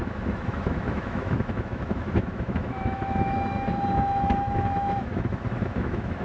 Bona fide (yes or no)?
no